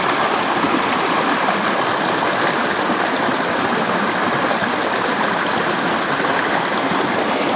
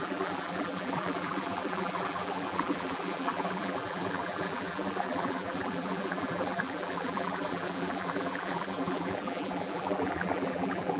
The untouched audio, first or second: first